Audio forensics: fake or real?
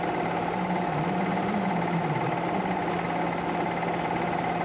real